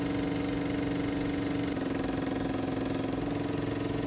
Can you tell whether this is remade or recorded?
recorded